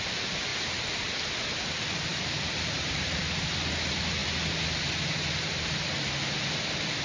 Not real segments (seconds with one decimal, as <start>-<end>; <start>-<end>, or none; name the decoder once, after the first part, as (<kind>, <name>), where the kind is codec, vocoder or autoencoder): none